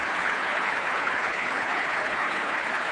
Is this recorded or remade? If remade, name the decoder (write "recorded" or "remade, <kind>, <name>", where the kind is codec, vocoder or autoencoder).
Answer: remade, codec, HILCodec